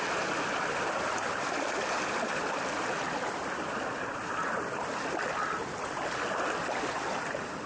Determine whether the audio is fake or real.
real